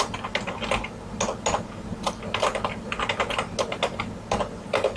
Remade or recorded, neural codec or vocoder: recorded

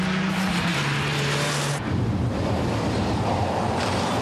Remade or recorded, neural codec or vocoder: recorded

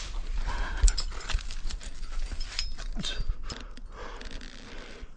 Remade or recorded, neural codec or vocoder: remade, vocoder, BigVGAN v2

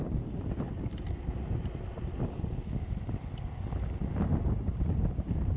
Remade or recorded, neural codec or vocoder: recorded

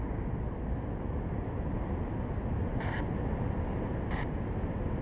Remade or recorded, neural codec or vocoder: recorded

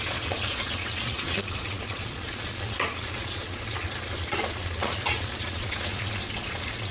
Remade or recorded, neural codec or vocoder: remade, vocoder, Vocos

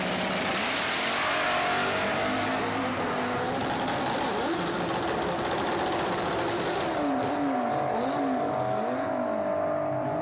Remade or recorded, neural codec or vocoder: recorded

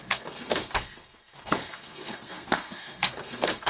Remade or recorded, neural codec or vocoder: remade, codec, SNAC